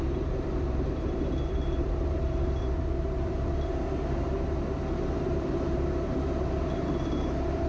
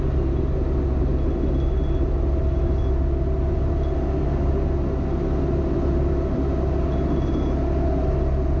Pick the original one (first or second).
second